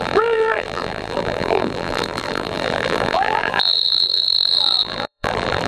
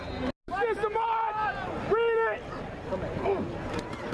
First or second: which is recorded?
second